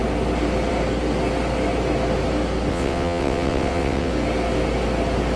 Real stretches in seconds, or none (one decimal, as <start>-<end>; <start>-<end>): 0.0-2.7; 4.1-5.4